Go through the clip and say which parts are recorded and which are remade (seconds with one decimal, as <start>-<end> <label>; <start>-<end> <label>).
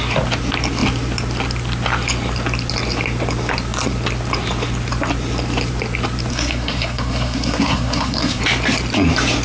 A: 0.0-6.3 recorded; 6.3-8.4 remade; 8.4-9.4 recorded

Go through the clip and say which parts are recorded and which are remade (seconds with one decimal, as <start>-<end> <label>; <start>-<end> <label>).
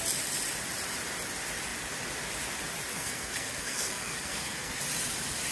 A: 0.0-2.9 recorded; 2.9-4.8 remade; 4.8-5.5 recorded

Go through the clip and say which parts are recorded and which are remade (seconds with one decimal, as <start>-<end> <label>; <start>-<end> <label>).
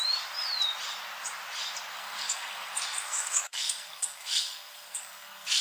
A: 0.0-1.9 recorded; 1.9-5.6 remade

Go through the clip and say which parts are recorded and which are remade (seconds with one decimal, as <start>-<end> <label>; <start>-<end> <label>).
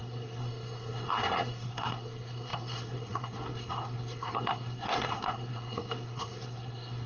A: 0.0-7.1 remade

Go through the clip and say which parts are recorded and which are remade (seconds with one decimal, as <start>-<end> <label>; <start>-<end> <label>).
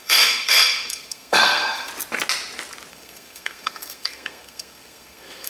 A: 0.0-1.9 remade; 1.9-2.9 recorded; 2.9-5.5 remade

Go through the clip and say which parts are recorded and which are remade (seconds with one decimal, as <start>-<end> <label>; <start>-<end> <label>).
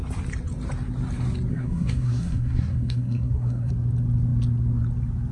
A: 0.0-1.5 recorded; 1.5-3.7 remade; 3.7-5.3 recorded